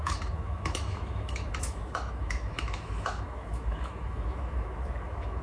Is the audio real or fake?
fake